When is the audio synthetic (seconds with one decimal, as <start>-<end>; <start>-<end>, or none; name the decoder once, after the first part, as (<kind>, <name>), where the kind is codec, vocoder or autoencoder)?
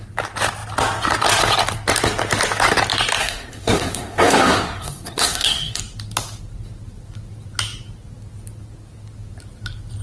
3.2-5.8 (codec, SNAC)